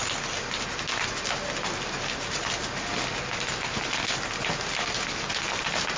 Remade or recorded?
recorded